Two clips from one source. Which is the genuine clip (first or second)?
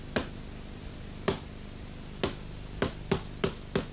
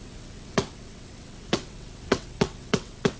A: first